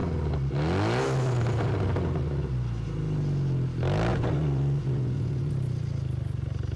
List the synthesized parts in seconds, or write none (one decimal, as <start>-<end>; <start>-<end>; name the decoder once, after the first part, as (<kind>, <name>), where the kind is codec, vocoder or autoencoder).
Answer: 4.1-5.5 (vocoder, Vocos)